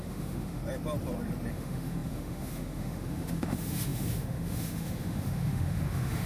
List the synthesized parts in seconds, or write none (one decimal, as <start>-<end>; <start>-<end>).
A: 0.0-0.6; 1.5-6.3